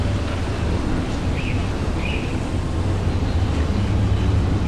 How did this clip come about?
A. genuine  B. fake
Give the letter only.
A